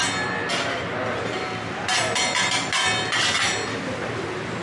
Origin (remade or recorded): recorded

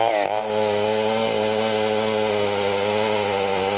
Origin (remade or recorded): recorded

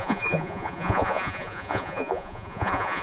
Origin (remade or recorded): remade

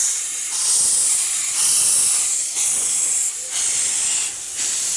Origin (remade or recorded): recorded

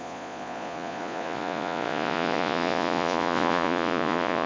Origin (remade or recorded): remade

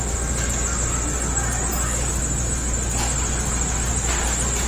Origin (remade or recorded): recorded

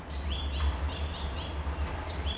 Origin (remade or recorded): recorded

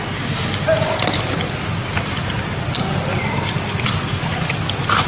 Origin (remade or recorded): recorded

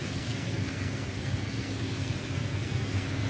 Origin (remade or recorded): remade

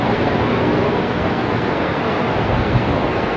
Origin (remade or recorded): remade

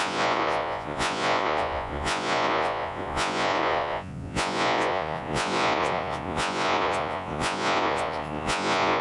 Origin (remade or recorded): remade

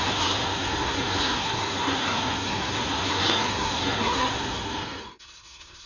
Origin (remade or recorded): remade